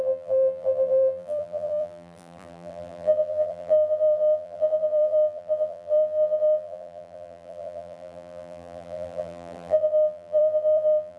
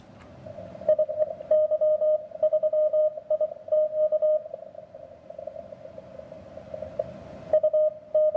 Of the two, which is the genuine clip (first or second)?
second